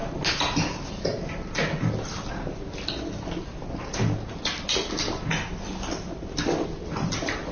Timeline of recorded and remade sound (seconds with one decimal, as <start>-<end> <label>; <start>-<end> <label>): 0.0-7.5 recorded